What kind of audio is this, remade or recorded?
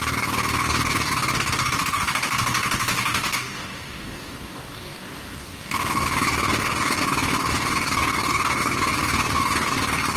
remade